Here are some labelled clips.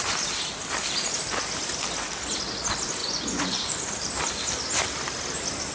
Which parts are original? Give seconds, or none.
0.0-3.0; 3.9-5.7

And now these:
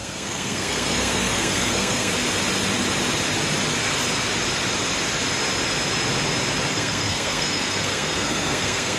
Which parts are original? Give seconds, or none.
2.1-6.7